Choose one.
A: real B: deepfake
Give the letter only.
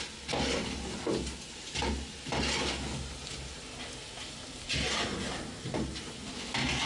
A